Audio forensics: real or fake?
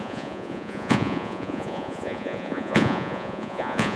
fake